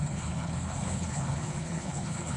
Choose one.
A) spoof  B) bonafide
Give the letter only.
A